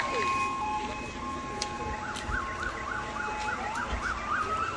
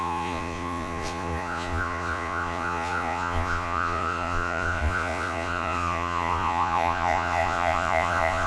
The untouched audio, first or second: first